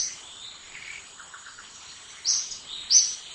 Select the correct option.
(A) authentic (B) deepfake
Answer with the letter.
B